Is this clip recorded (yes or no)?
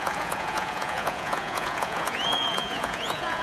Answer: no